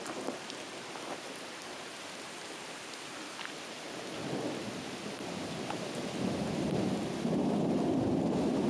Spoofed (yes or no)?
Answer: no